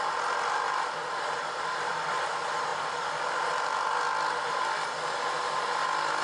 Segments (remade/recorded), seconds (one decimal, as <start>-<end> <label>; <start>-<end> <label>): 0.0-1.4 recorded; 1.4-1.9 remade; 1.9-6.2 recorded